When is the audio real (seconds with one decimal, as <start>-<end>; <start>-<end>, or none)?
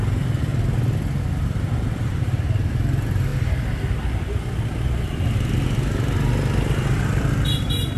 0.5-1.2; 3.3-7.0